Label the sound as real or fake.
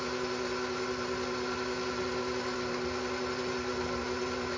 real